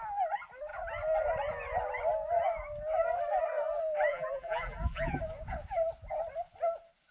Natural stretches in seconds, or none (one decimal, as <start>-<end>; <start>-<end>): 0.0-4.1; 5.2-7.1